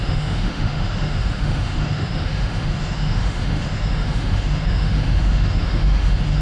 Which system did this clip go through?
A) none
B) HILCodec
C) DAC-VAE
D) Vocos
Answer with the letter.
C